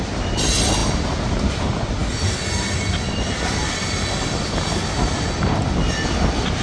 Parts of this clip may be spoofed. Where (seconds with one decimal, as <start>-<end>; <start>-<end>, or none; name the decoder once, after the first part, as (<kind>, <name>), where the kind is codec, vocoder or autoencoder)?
none